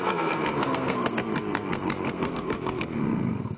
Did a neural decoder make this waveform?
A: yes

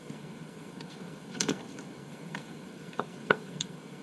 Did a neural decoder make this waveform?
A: yes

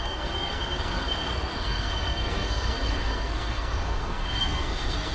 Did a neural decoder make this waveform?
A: yes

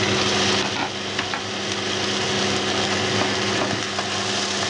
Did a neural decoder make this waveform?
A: no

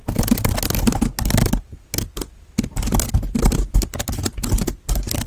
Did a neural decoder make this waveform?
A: no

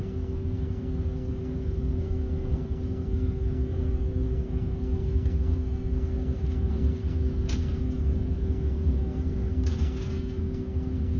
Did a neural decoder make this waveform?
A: yes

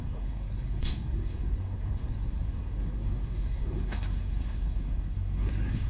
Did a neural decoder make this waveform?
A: yes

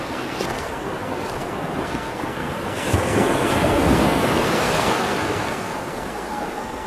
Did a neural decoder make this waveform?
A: yes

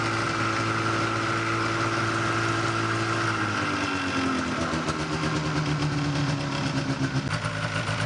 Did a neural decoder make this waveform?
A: no